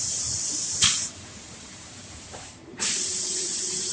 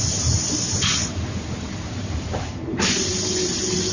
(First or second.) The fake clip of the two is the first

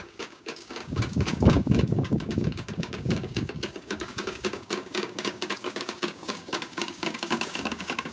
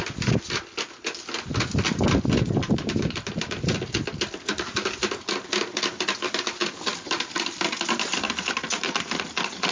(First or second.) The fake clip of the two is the first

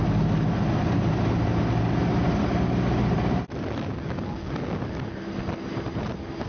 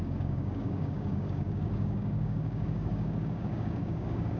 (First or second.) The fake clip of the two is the second